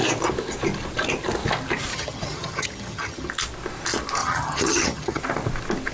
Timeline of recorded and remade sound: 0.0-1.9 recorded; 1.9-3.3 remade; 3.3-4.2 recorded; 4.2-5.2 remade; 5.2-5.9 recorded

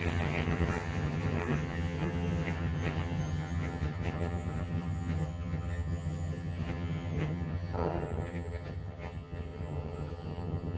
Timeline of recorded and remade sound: 0.0-10.8 remade

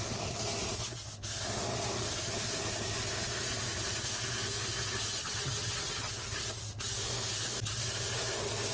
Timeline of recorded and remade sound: 0.0-5.2 recorded; 5.2-6.1 remade; 6.1-8.7 recorded